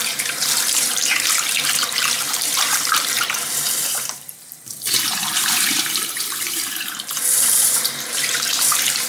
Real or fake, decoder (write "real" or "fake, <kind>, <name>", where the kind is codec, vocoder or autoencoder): fake, vocoder, BigVGAN v2